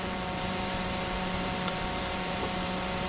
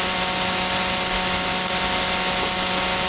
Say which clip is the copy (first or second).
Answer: first